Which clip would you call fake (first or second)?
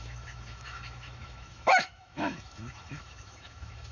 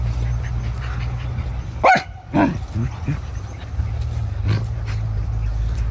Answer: first